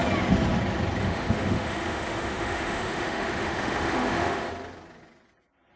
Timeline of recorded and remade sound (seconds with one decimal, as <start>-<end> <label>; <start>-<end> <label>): 0.0-1.0 recorded; 1.0-4.5 remade; 4.5-5.8 recorded